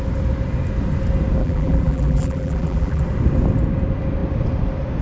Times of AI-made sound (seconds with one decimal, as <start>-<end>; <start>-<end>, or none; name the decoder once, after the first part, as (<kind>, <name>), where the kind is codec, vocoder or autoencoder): 1.4-3.0 (vocoder, BigVGAN v2)